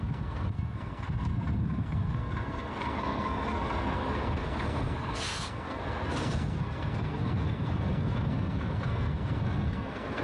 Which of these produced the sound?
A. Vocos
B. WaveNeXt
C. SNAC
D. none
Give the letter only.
C